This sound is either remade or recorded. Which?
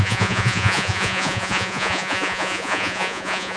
remade